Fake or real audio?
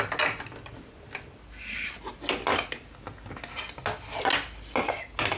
real